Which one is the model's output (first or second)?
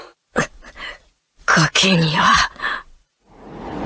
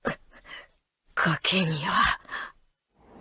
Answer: first